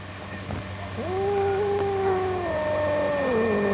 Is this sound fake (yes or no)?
no